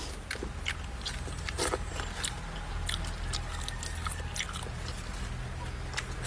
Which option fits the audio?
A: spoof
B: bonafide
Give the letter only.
B